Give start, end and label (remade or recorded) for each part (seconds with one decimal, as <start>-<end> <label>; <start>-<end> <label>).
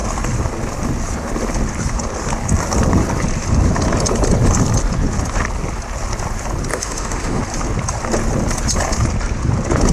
0.0-6.7 recorded; 6.7-7.4 remade; 7.4-9.9 recorded